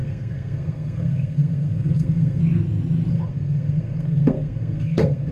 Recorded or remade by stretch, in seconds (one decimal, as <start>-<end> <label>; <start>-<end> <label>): 0.0-2.4 remade; 2.4-3.1 recorded; 3.1-5.3 remade